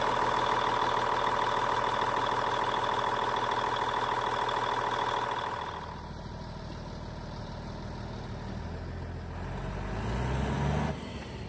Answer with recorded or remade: recorded